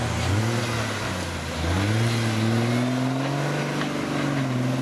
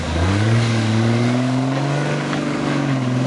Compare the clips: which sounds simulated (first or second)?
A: second